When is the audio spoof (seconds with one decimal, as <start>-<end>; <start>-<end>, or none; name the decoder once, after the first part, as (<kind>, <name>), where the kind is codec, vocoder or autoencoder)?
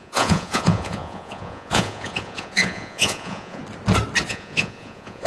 0.0-3.6 (vocoder, Vocos); 4.3-5.3